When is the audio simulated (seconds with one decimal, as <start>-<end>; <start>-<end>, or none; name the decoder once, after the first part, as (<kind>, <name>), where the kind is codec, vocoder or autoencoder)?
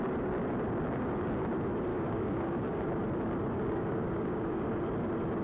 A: 1.9-2.9 (codec, DAC); 3.6-4.7